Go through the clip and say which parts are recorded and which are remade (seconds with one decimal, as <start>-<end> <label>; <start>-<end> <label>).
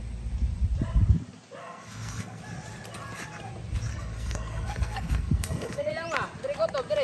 0.0-1.6 recorded; 1.6-2.4 remade; 2.4-3.9 recorded; 3.9-5.9 remade; 5.9-7.0 recorded